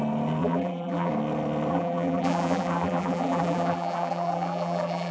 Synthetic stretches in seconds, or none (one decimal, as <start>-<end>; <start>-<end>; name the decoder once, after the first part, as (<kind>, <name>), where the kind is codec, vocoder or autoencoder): 0.4-1.1 (vocoder, BigVGAN v2); 1.7-5.1